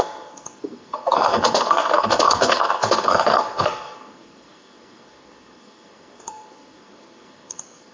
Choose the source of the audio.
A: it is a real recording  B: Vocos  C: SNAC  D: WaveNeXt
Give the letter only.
C